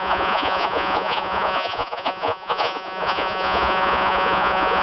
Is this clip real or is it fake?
fake